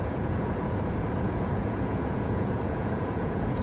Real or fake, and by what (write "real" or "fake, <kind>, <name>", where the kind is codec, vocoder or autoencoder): fake, vocoder, Vocos